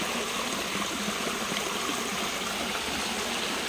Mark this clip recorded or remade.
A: recorded